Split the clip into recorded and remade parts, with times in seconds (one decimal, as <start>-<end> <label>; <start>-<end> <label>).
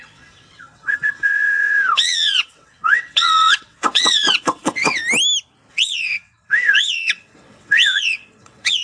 0.0-5.0 remade; 5.0-5.7 recorded; 5.7-8.8 remade